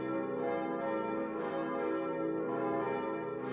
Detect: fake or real real